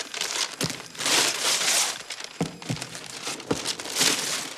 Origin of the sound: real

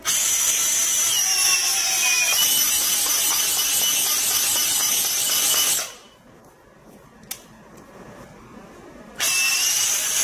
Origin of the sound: real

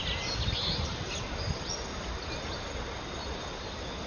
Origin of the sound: real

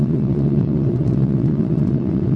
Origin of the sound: fake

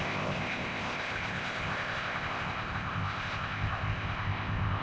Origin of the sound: fake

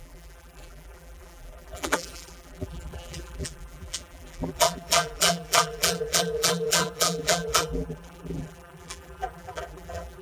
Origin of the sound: fake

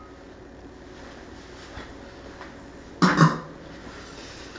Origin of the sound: real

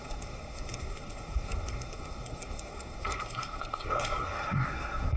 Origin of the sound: fake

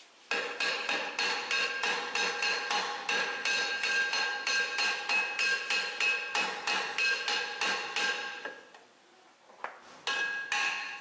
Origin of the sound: real